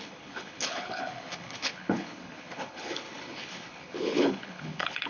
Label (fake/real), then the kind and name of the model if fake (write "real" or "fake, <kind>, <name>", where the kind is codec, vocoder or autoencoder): fake, codec, HILCodec